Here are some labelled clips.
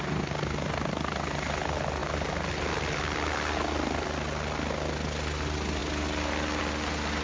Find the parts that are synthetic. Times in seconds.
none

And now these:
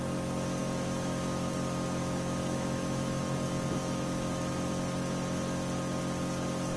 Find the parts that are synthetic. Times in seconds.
0.6-1.5 (autoencoder, DAC-VAE); 2.0-3.2; 3.8-4.4

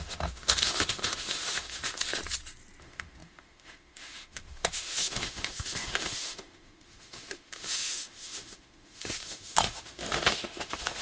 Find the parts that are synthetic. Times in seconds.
0.0-2.2 (autoencoder, DAC-VAE); 2.8-11.0

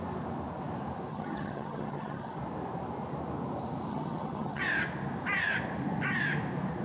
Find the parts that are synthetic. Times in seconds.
1.1-2.4 (vocoder, HiFi-GAN); 3.9-4.6

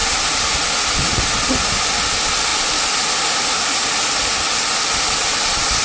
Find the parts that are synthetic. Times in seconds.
none